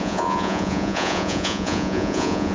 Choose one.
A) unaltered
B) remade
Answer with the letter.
B